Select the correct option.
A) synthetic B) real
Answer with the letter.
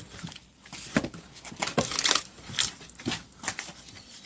B